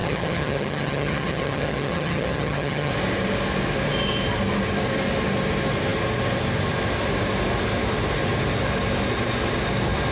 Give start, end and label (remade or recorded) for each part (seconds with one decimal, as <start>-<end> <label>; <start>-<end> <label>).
0.0-2.9 remade; 2.9-10.1 recorded